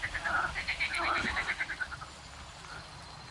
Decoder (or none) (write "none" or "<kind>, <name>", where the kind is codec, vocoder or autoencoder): none